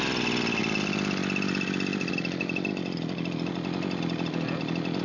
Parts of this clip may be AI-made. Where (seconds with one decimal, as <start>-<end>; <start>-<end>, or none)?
none